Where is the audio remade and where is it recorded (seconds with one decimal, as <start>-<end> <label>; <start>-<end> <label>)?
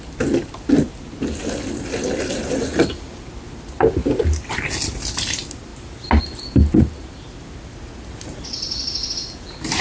0.0-9.8 recorded